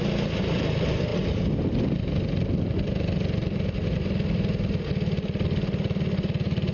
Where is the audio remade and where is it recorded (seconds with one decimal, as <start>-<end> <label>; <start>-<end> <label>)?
0.0-6.7 recorded